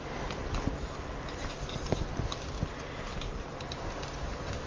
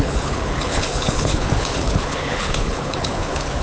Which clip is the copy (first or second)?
second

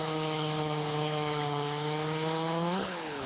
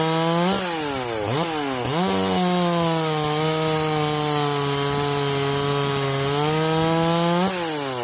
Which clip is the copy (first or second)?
first